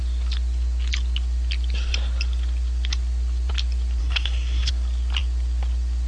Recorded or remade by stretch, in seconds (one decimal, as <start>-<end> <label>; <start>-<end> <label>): 0.0-4.0 recorded; 4.0-4.7 remade; 4.7-6.1 recorded